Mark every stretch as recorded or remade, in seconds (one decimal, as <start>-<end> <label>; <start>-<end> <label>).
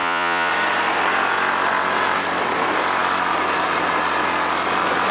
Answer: 0.0-0.5 remade; 0.5-5.1 recorded